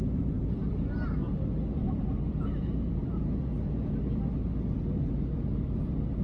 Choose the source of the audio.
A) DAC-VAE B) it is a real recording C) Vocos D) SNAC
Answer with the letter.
B